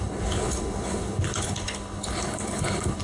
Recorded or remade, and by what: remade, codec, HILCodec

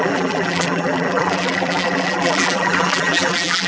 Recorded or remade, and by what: remade, vocoder, BigVGAN v2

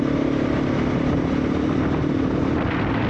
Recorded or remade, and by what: remade, vocoder, BigVGAN v2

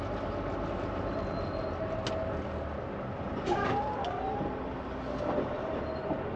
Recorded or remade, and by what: recorded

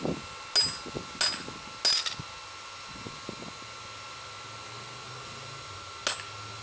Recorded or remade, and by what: recorded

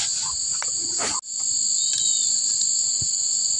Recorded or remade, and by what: recorded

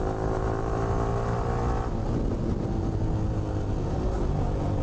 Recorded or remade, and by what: recorded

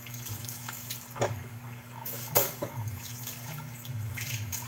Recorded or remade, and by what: remade, codec, DAC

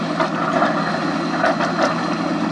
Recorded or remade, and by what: recorded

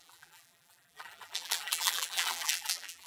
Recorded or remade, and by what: remade, vocoder, BigVGAN v2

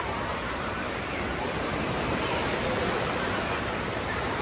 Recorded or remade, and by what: remade, vocoder, BigVGAN v2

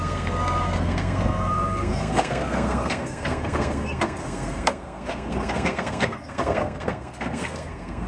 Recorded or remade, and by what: remade, codec, SNAC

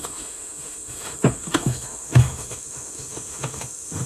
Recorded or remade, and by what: remade, autoencoder, DAC-VAE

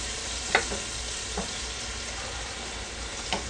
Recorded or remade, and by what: recorded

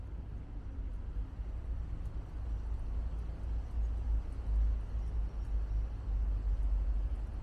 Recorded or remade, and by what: recorded